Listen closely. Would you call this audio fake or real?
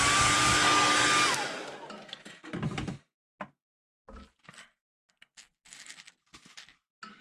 real